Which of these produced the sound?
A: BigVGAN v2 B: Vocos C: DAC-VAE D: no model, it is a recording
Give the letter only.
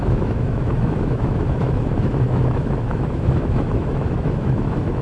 C